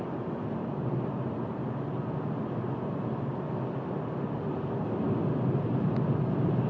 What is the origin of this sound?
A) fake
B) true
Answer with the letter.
B